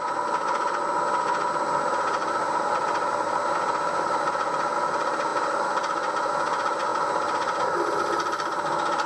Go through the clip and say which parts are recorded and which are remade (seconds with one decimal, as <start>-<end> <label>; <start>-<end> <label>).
0.0-9.1 recorded